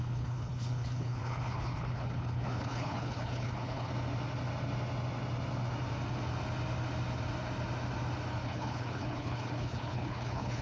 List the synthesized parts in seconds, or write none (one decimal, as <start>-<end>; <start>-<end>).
0.0-3.9; 8.3-10.6